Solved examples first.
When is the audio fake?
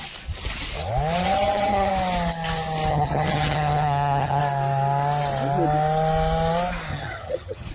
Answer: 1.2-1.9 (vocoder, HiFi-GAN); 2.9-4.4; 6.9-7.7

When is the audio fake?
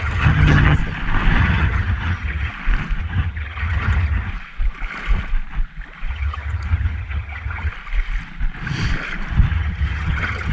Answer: 0.0-0.8 (vocoder, HiFi-GAN); 1.4-2.5; 3.0-4.3; 6.1-7.7; 9.5-10.5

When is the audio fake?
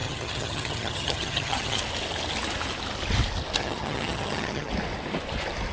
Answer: 0.0-1.8 (vocoder, HiFi-GAN); 3.6-4.7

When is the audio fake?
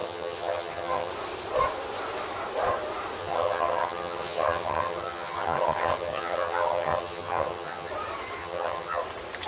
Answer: 0.0-1.1 (vocoder, HiFi-GAN); 3.2-7.9; 8.4-9.0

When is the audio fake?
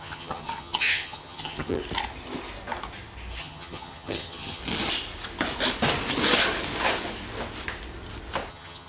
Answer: 0.0-1.8 (vocoder, HiFi-GAN); 3.4-4.6; 8.5-8.9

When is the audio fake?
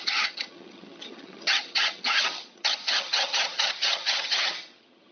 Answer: 0.0-5.1 (vocoder, HiFi-GAN)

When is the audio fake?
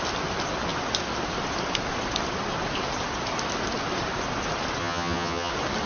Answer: 4.8-5.5 (vocoder, HiFi-GAN)